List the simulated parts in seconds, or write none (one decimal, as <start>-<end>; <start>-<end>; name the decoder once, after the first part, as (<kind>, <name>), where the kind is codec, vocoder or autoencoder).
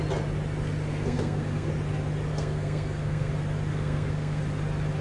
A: 0.9-1.7 (codec, SNAC); 2.3-3.3; 3.7-4.4